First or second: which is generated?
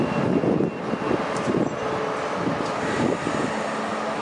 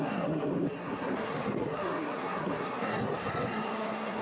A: second